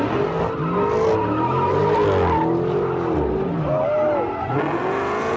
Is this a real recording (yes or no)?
yes